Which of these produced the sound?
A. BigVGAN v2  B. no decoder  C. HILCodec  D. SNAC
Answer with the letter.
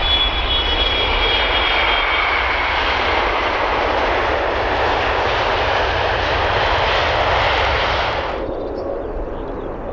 B